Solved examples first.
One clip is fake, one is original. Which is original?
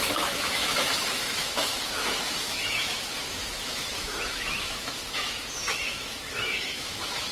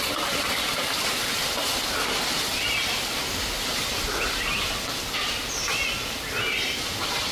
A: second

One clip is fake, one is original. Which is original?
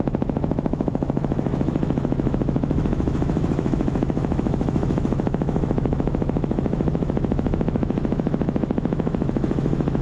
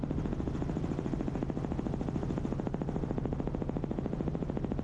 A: second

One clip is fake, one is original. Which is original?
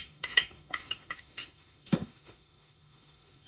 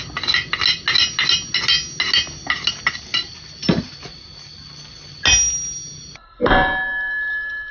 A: second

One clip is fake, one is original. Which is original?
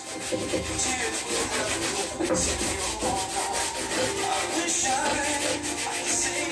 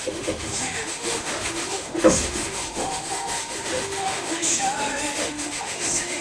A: first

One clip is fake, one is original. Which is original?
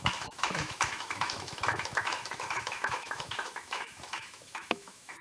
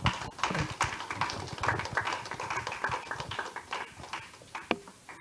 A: second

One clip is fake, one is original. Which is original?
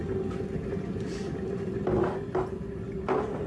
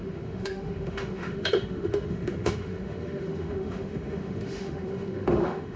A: first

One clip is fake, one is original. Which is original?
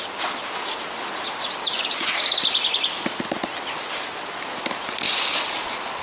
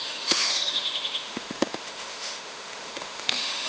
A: first